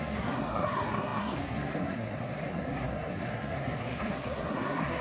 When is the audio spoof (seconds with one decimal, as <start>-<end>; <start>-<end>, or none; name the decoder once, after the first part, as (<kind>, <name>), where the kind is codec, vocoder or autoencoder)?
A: 0.0-5.0 (codec, SNAC)